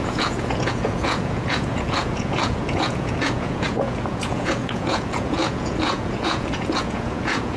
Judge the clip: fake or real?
fake